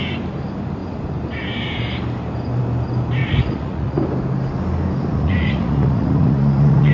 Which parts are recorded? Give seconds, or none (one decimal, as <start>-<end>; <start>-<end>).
0.0-3.2; 4.0-5.1